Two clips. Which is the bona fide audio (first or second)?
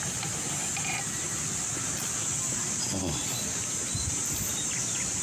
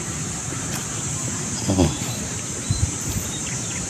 first